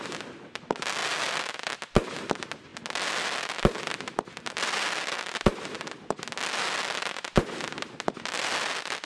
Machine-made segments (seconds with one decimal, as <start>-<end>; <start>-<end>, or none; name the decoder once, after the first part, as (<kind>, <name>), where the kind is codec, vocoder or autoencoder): none

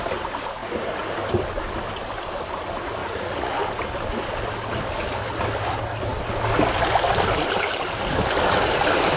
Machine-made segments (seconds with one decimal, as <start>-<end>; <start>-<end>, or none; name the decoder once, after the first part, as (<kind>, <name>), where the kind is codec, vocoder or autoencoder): 3.0-3.5 (vocoder, Vocos)

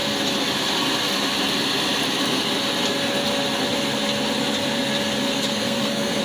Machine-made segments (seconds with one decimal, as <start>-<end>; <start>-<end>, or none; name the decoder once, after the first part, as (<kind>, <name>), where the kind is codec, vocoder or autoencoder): 5.3-6.2 (codec, SNAC)

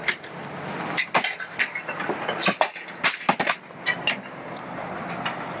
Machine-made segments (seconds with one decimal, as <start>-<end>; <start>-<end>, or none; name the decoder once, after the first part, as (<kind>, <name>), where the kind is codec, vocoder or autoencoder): 0.0-0.5 (vocoder, BigVGAN v2)

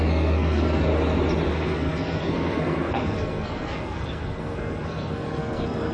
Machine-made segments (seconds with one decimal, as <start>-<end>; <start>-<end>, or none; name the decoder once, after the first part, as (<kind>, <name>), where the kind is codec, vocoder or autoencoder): 0.0-0.9 (codec, SNAC); 1.5-5.9